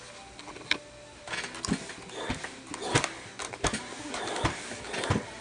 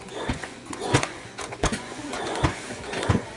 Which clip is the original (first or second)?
first